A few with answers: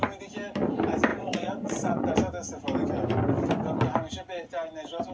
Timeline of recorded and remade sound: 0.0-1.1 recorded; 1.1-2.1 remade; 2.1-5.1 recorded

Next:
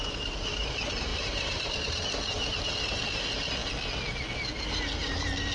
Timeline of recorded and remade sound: 0.0-1.1 recorded; 1.1-2.0 remade; 2.0-5.5 recorded

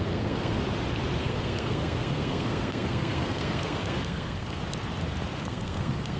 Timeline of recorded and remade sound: 0.0-0.6 remade; 0.6-1.2 recorded; 1.2-4.6 remade; 4.6-5.4 recorded; 5.4-6.2 remade